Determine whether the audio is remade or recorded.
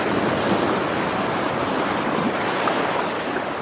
recorded